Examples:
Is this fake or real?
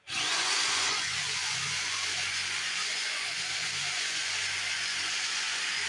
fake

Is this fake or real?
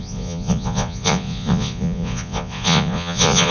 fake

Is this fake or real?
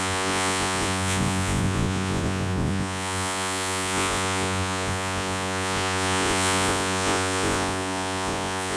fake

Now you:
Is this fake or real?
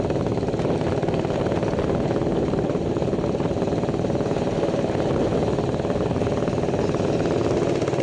real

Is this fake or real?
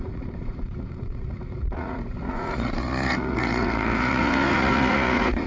fake